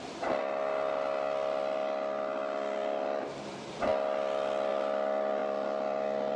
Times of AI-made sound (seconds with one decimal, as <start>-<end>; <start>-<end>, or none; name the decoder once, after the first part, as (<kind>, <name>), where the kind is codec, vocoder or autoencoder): 0.0-0.4 (vocoder, BigVGAN v2); 3.5-3.9; 4.7-6.4